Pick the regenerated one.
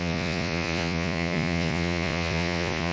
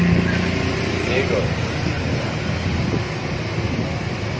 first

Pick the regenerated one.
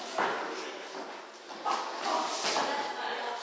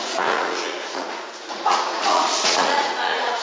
second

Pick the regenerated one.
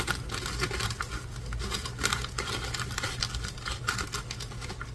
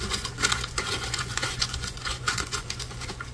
second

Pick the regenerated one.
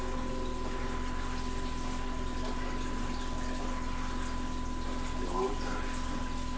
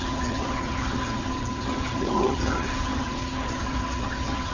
second